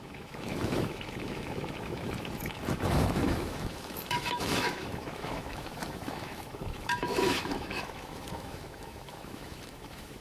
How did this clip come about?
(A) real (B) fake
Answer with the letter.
B